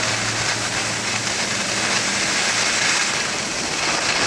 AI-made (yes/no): no